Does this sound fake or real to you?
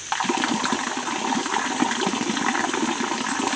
real